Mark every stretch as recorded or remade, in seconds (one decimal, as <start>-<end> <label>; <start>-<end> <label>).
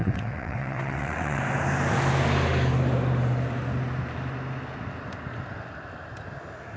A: 0.0-1.4 remade; 1.4-6.8 recorded